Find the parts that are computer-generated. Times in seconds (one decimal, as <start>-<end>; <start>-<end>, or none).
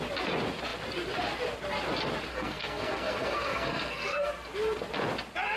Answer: 2.3-4.3